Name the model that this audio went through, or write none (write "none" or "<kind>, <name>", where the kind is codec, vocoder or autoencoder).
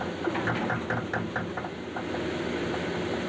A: none